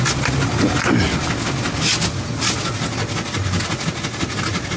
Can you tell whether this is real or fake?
real